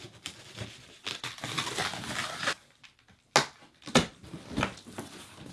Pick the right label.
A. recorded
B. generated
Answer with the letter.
A